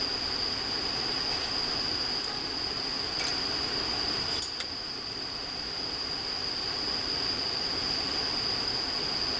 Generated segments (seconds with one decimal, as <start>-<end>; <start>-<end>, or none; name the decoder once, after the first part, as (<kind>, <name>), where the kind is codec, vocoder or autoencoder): 3.3-4.8 (vocoder, BigVGAN v2)